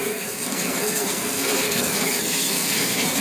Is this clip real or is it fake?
fake